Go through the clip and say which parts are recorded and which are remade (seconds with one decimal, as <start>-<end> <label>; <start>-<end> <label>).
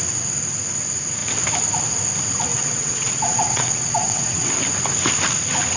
0.0-2.5 recorded; 2.5-4.5 remade; 4.5-5.8 recorded